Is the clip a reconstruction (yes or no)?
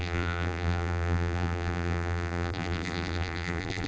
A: yes